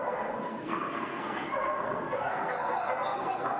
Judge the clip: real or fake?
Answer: fake